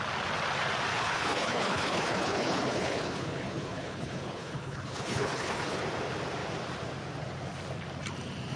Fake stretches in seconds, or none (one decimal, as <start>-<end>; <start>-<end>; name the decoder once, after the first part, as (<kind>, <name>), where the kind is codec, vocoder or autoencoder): 0.9-5.8 (codec, HILCodec)